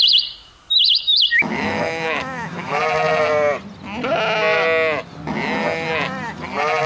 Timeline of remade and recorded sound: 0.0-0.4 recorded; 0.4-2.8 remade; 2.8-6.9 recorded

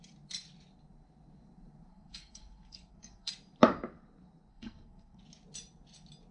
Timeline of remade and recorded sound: 0.0-1.9 recorded; 1.9-3.3 remade; 3.3-4.5 recorded; 4.5-5.2 remade; 5.2-6.3 recorded

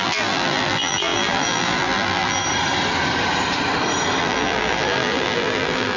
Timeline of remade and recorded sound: 0.0-2.4 remade; 2.4-4.2 recorded; 4.2-6.0 remade

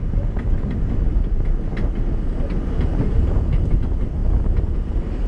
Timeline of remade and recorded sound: 0.0-5.3 recorded

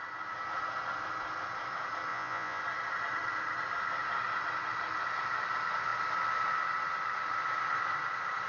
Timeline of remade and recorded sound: 0.0-2.1 recorded; 2.1-2.6 remade; 2.6-8.5 recorded

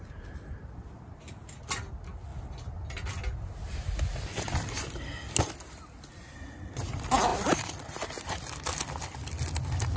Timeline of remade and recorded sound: 0.0-10.0 recorded

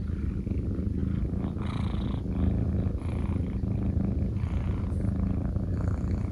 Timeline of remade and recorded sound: 0.0-6.3 recorded

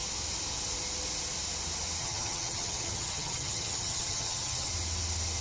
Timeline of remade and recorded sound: 0.0-2.0 recorded; 2.0-4.7 remade; 4.7-5.4 recorded